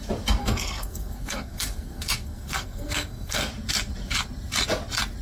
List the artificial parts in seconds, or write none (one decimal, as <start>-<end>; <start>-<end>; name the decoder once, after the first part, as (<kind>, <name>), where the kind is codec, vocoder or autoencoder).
0.4-3.5 (codec, SNAC)